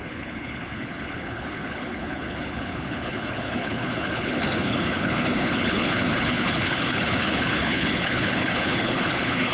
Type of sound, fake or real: fake